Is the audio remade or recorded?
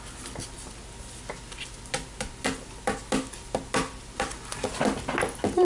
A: recorded